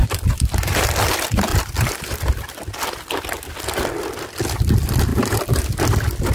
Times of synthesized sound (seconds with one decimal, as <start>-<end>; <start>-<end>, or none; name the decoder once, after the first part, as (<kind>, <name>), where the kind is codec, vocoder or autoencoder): 0.0-1.0 (vocoder, BigVGAN v2); 1.5-2.9; 5.1-5.6